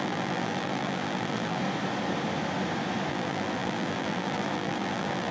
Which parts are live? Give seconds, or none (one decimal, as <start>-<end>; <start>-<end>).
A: 1.6-3.1